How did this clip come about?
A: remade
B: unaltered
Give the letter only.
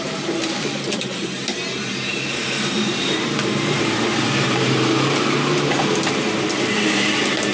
A